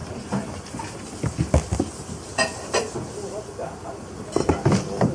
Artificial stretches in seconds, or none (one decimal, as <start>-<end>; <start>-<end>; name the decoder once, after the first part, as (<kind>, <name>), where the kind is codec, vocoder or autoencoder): none